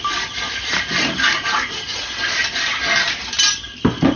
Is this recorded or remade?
recorded